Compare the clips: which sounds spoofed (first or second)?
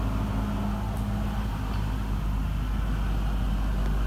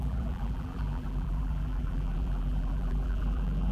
second